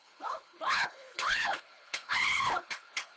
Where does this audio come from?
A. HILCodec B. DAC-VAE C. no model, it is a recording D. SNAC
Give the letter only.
A